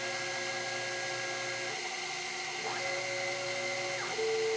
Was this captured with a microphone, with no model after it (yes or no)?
yes